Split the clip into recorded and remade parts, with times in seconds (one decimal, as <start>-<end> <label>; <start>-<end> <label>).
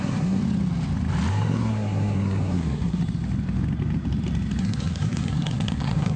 0.0-0.4 remade; 0.4-1.3 recorded; 1.3-3.0 remade; 3.0-4.6 recorded; 4.6-6.2 remade